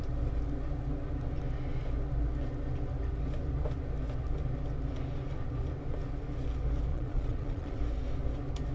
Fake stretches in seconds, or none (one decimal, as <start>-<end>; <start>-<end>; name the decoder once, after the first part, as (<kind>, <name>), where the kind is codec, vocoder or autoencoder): 6.9-7.8 (vocoder, Vocos)